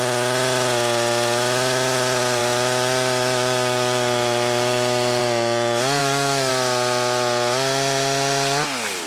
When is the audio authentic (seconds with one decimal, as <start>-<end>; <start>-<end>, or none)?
0.0-2.4; 5.2-6.0; 6.5-9.1